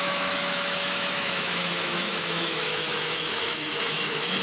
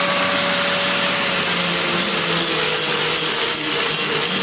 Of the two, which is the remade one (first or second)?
first